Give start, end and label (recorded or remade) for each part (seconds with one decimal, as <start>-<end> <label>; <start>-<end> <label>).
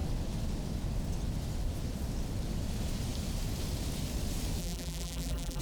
0.0-4.6 recorded; 4.6-5.6 remade